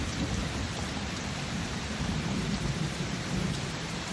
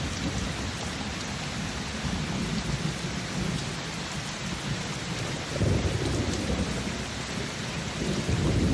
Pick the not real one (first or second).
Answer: first